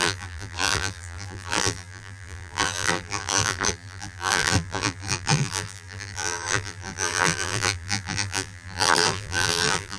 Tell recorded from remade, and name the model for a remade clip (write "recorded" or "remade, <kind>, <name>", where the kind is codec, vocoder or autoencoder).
remade, vocoder, BigVGAN v2